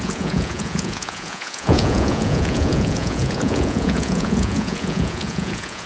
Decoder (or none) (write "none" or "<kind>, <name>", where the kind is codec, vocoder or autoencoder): vocoder, Vocos